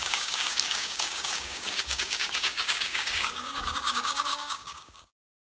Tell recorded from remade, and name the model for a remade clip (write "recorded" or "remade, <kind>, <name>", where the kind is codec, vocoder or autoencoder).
remade, codec, DAC